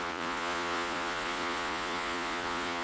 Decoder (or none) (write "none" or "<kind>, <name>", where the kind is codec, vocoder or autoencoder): vocoder, Vocos